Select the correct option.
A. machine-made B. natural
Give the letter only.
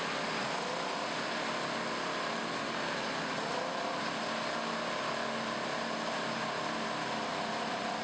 B